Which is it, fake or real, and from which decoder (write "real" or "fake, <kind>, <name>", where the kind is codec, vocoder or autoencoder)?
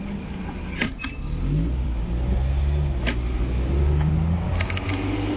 real